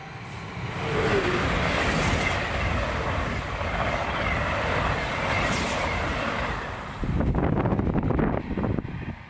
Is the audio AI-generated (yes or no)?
no